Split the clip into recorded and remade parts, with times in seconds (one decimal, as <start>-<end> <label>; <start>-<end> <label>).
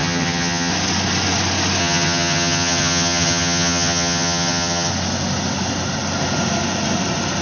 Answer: 0.0-0.7 remade; 0.7-1.8 recorded; 1.8-4.9 remade; 4.9-7.4 recorded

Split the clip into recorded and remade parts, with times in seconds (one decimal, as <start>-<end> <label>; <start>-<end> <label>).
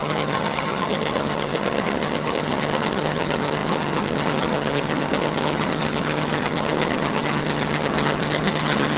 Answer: 0.0-9.0 remade